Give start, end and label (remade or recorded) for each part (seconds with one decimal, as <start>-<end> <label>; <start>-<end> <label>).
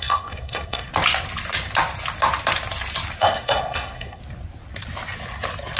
0.0-0.9 remade; 0.9-3.2 recorded; 3.2-4.2 remade; 4.2-5.8 recorded